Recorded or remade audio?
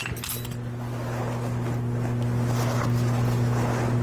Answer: recorded